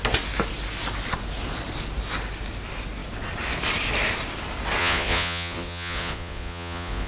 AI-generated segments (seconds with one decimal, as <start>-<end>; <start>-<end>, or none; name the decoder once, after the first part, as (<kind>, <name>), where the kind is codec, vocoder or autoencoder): 4.8-7.1 (vocoder, Vocos)